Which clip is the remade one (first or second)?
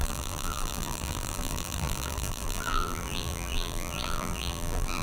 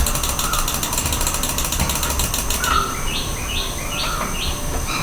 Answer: first